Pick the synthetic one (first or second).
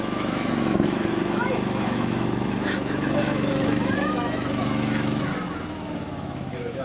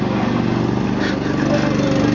first